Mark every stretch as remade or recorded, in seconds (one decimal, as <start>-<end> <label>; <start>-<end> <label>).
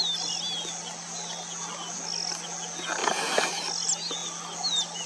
0.0-5.1 recorded